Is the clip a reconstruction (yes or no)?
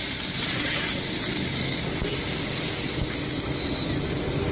no